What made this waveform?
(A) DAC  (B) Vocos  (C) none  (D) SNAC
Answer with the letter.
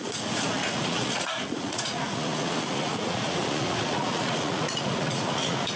B